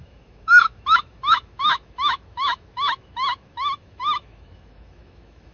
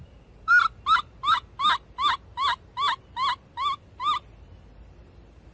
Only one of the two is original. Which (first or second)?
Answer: second